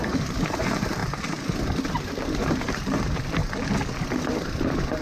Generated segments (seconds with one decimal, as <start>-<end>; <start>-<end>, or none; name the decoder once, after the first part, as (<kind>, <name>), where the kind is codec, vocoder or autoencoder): 0.0-1.0 (vocoder, BigVGAN v2); 1.9-3.4; 4.2-5.0